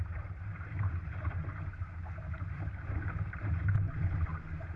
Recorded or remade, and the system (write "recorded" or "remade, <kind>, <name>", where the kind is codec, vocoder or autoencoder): remade, vocoder, BigVGAN v2